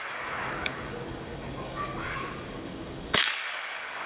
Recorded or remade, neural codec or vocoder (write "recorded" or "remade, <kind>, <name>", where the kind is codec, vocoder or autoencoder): remade, codec, DAC